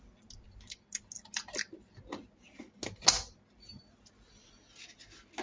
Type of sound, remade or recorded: recorded